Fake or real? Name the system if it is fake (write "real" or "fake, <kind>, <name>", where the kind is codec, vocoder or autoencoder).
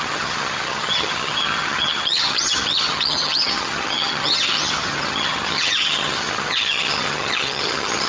fake, vocoder, HiFi-GAN